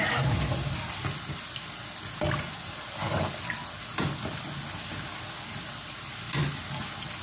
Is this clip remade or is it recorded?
recorded